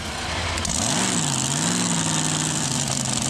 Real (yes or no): yes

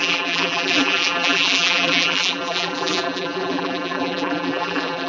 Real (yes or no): no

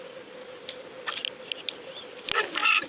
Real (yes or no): yes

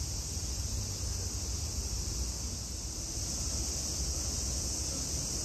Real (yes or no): yes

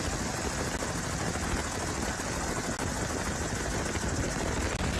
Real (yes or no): yes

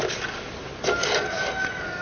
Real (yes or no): yes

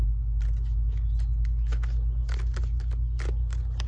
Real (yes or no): yes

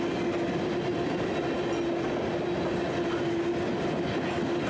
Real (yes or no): yes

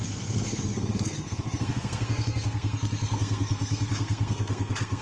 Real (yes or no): no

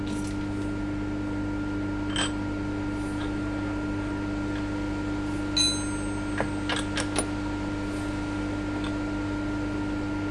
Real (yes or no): yes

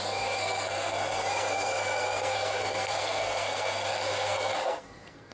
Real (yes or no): no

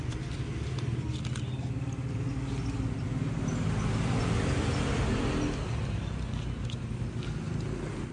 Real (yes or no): yes